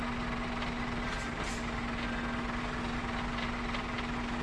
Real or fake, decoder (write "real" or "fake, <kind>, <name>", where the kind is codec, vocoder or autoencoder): real